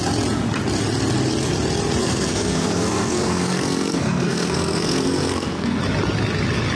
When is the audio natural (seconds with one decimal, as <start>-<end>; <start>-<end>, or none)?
0.0-2.0; 5.8-6.8